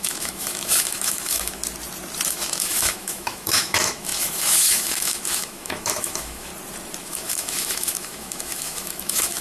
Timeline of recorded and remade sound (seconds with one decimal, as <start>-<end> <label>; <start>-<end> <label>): 0.0-1.6 remade; 1.6-2.3 recorded; 2.3-6.5 remade; 6.5-7.0 recorded; 7.0-9.4 remade